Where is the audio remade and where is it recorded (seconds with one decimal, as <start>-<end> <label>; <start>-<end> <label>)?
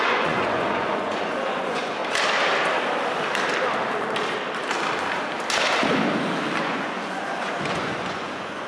0.0-2.0 remade; 2.0-6.6 recorded; 6.6-8.7 remade